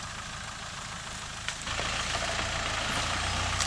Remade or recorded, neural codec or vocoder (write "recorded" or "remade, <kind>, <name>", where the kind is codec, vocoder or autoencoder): recorded